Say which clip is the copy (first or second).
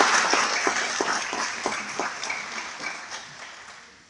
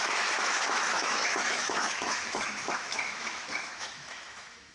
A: second